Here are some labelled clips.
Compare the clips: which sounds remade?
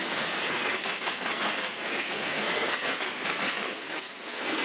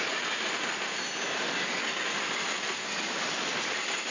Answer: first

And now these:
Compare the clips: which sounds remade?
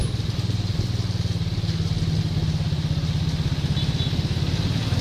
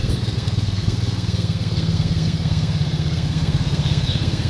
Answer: second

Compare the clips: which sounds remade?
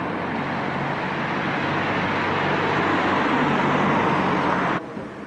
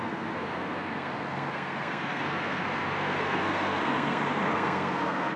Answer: second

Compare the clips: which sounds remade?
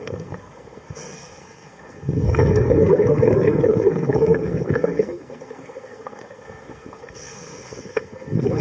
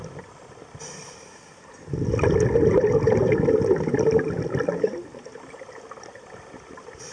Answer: first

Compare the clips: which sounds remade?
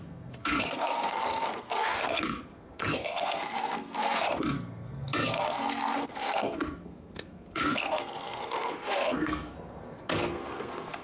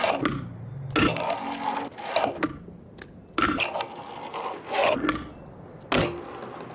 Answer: first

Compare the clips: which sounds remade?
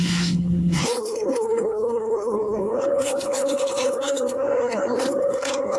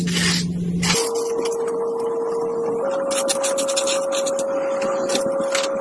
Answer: first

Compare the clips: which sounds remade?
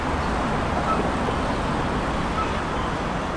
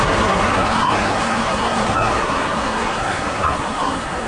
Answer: second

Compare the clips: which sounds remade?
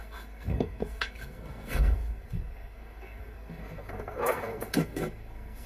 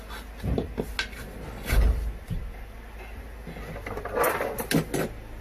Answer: first